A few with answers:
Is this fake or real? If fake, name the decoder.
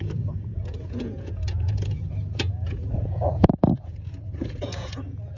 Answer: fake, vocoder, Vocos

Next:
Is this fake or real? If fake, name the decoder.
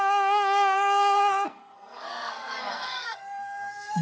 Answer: fake, codec, SNAC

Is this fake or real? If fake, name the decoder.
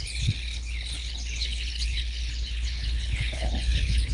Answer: fake, codec, HILCodec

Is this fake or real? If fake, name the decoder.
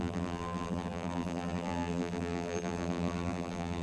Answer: fake, vocoder, BigVGAN v2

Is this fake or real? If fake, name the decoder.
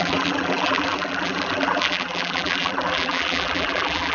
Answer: fake, vocoder, BigVGAN v2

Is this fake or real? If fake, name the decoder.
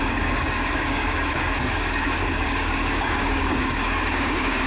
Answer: fake, codec, DAC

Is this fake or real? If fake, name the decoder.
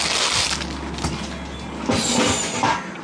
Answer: real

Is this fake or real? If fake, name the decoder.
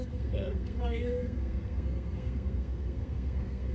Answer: fake, codec, SNAC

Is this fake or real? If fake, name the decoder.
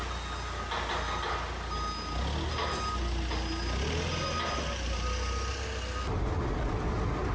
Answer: real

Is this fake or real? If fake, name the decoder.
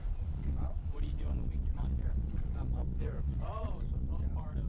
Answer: fake, vocoder, Vocos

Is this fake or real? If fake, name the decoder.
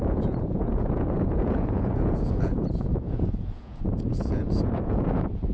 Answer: fake, vocoder, Vocos